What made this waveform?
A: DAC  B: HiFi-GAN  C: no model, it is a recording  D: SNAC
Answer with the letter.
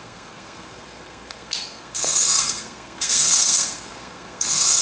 D